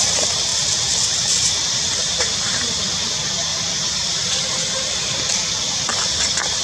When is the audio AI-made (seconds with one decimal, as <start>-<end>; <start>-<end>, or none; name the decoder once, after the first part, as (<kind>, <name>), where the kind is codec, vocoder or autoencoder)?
3.5-5.2 (vocoder, BigVGAN v2)